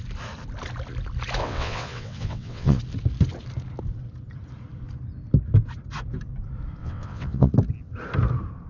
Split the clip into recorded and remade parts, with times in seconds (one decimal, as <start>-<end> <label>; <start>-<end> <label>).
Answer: 0.0-1.4 recorded; 1.4-2.8 remade; 2.8-6.8 recorded; 6.8-7.5 remade; 7.5-8.7 recorded